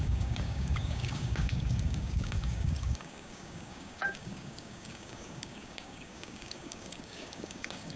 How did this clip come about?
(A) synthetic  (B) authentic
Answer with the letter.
A